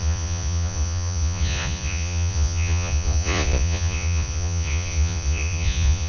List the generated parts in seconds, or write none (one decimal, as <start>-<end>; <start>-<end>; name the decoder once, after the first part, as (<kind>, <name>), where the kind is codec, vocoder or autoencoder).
0.0-6.1 (vocoder, Vocos)